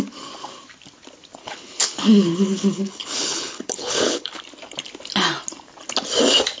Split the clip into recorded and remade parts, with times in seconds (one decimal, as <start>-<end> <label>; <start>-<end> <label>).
0.0-1.4 recorded; 1.4-4.4 remade; 4.4-6.6 recorded